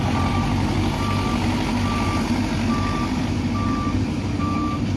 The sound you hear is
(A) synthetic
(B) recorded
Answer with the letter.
B